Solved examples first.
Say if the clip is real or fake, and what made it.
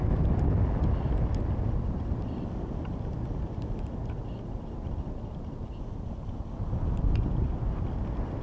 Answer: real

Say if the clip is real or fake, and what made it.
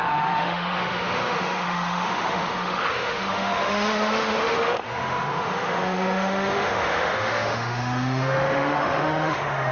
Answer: fake, autoencoder, DAC-VAE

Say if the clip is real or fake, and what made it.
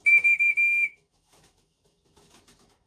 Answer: fake, autoencoder, DAC-VAE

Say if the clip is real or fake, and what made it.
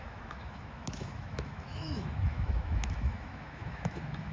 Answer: fake, autoencoder, DAC-VAE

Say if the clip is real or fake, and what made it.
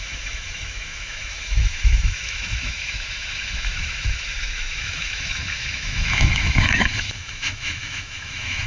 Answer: fake, autoencoder, DAC-VAE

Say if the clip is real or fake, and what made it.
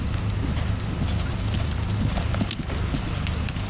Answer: real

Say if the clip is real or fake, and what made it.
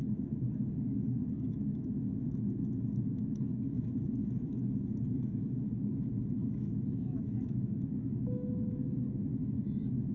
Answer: fake, autoencoder, DAC-VAE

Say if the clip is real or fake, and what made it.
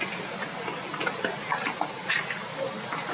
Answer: real